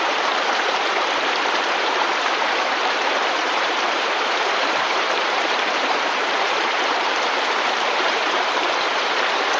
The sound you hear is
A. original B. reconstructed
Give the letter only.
B